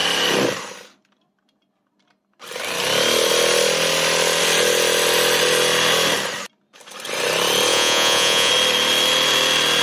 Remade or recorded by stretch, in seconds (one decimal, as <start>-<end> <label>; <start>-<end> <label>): 0.0-7.7 recorded; 7.7-8.5 remade; 8.5-9.8 recorded

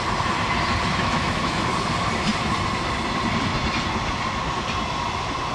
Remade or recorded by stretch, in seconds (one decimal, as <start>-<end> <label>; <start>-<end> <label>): 0.0-0.9 recorded; 0.9-1.7 remade; 1.7-5.5 recorded

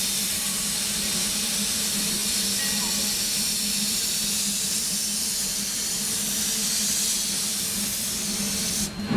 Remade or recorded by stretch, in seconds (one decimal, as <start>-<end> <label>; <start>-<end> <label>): 0.0-1.2 remade; 1.2-1.7 recorded; 1.7-2.2 remade; 2.2-3.6 recorded; 3.6-6.6 remade; 6.6-9.2 recorded

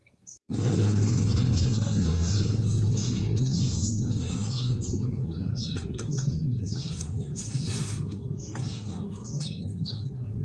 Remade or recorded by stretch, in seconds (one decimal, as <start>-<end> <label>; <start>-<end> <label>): 0.0-10.4 remade

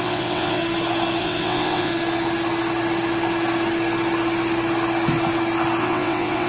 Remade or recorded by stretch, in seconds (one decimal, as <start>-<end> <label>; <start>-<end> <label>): 0.0-0.6 remade; 0.6-1.2 recorded; 1.2-1.9 remade; 1.9-5.8 recorded; 5.8-6.5 remade

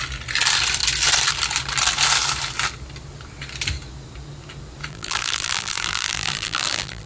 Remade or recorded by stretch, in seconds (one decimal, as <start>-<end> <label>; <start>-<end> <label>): 0.0-4.9 recorded; 4.9-7.1 remade